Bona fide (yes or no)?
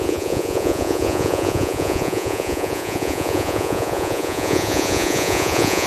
no